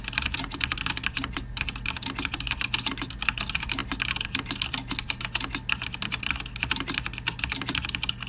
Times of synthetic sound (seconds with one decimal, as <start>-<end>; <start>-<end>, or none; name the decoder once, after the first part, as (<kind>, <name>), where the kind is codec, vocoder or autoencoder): none